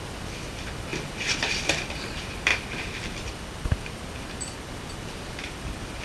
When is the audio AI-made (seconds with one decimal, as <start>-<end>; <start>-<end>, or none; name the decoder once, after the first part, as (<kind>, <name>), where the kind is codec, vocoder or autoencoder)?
none